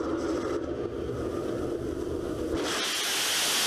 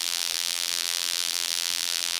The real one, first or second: first